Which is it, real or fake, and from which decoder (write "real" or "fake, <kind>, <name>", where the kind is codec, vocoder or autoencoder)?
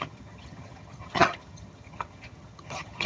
fake, vocoder, HiFi-GAN